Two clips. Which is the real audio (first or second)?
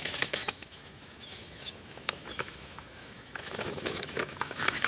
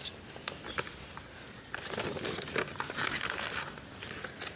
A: second